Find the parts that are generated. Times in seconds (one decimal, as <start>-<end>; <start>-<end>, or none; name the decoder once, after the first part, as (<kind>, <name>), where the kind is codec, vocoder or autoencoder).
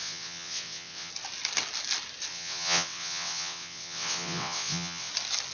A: 0.0-1.1 (vocoder, WaveNeXt); 2.3-5.1